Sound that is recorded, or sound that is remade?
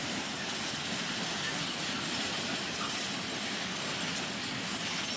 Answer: recorded